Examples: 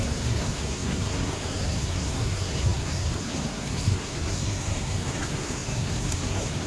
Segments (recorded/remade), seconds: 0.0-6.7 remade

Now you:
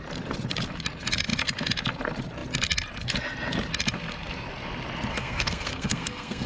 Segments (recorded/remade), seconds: 0.0-5.1 recorded; 5.1-6.5 remade

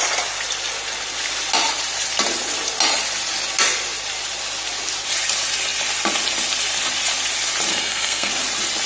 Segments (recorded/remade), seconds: 0.0-7.7 recorded; 7.7-8.3 remade; 8.3-8.9 recorded